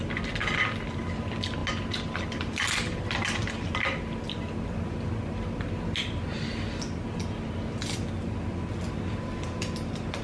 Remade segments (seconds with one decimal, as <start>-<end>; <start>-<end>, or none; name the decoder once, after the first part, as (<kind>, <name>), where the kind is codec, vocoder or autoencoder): none